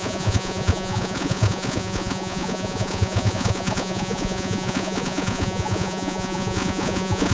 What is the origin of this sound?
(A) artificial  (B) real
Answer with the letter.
A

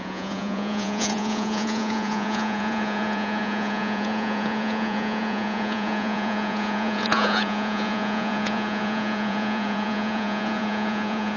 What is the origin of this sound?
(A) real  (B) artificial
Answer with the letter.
B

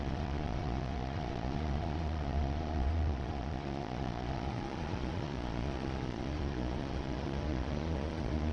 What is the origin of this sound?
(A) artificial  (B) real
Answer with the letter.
A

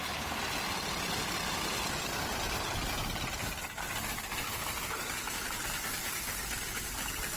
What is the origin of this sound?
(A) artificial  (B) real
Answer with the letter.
B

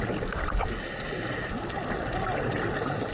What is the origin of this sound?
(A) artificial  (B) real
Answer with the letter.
B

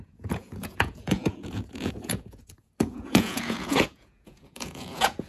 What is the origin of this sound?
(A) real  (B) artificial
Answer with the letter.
B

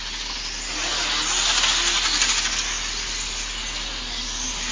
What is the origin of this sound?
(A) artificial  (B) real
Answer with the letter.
B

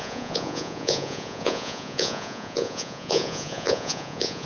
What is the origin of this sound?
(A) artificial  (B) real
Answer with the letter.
A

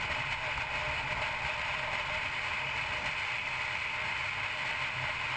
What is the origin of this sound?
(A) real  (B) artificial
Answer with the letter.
A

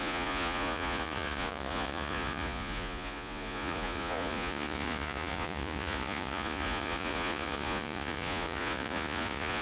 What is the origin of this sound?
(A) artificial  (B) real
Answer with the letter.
A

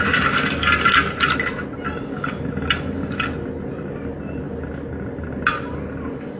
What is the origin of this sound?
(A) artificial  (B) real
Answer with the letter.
B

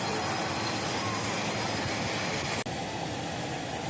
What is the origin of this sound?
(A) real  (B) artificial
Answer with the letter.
A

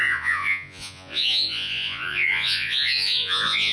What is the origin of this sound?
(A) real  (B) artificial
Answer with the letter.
B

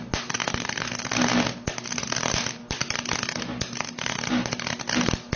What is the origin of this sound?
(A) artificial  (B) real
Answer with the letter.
B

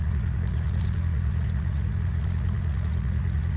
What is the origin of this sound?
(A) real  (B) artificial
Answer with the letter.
B